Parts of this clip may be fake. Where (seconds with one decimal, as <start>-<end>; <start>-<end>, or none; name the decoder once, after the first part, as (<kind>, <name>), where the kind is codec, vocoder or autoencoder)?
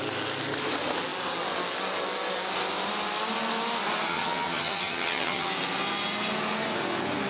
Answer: 4.1-5.5 (vocoder, HiFi-GAN)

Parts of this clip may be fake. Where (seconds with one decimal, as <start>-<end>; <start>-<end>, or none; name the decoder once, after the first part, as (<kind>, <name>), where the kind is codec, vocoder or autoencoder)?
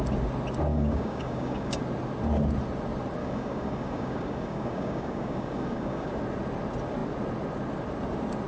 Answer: 0.7-1.8 (codec, DAC); 3.2-6.1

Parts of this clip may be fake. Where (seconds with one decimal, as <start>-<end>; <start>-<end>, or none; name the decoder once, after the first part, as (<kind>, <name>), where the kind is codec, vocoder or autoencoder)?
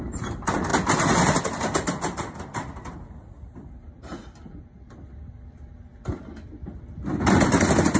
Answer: none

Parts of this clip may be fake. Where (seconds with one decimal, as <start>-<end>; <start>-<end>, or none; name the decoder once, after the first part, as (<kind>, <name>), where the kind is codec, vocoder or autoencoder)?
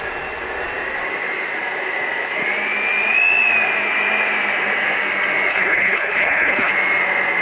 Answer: 5.5-6.7 (codec, HILCodec)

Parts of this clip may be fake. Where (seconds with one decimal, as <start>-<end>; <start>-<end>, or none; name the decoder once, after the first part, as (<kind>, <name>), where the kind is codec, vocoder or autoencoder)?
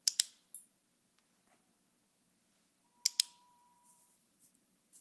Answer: 0.0-0.8 (vocoder, BigVGAN v2); 3.4-5.0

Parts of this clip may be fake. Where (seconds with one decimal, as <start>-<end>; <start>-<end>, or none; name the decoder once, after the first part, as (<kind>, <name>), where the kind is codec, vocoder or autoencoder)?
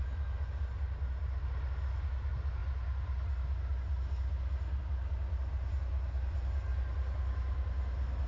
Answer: none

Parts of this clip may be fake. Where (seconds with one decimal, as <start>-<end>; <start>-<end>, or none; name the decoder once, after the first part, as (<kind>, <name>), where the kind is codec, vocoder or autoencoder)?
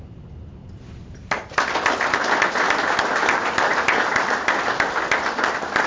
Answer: none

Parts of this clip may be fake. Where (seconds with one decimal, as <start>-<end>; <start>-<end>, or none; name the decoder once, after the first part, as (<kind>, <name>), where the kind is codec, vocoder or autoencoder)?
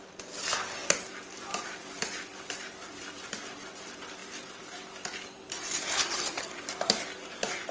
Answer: 0.0-0.8 (vocoder, BigVGAN v2); 1.7-4.2; 6.4-7.7